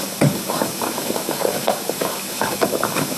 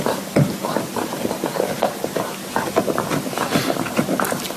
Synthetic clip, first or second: first